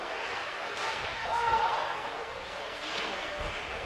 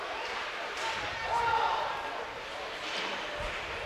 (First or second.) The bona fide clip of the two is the second